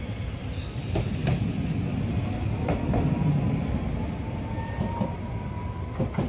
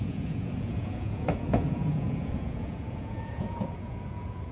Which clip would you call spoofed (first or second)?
second